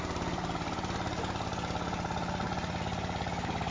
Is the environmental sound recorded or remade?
recorded